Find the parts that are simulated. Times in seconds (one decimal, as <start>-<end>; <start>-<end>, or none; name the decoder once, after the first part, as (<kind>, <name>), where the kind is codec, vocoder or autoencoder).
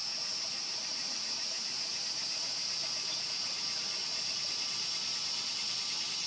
0.0-2.0 (vocoder, Vocos); 4.0-4.5